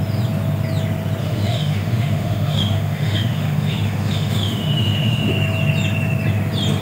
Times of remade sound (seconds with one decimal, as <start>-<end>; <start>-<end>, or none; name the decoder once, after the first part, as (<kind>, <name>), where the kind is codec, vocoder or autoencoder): 1.2-5.3 (autoencoder, DAC-VAE)